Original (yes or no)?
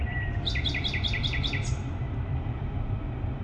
no